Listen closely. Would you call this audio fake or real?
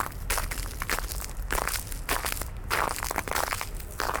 real